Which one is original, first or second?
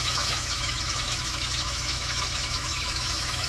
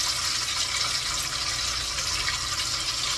second